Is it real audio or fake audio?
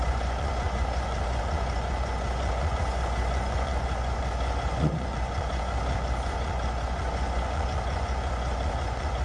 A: fake